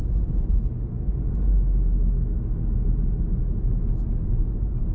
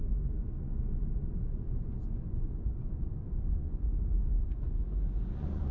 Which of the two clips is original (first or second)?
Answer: first